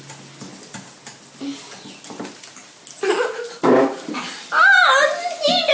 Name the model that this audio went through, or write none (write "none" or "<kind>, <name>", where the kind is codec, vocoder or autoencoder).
none